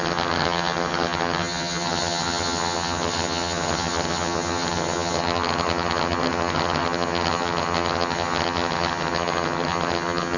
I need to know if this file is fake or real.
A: fake